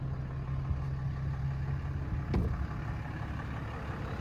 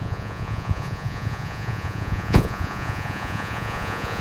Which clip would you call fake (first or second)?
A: second